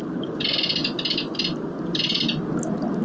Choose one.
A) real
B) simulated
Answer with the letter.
A